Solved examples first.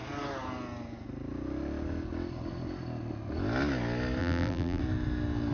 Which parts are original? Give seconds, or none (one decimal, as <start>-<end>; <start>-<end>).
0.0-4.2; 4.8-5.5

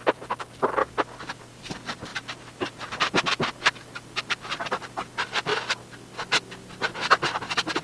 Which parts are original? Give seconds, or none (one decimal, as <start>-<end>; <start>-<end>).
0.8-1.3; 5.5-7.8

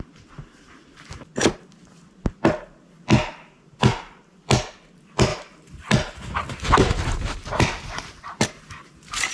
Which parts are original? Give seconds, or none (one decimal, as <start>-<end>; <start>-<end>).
0.0-9.3

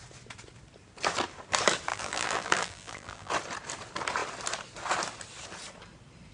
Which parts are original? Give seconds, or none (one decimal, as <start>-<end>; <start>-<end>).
0.0-1.9; 3.3-6.3

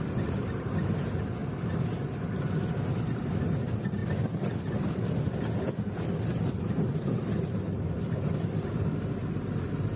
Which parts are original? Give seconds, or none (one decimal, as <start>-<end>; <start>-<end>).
1.4-2.8; 4.0-8.2